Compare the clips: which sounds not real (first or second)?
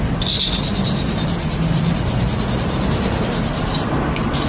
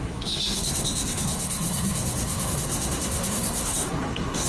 second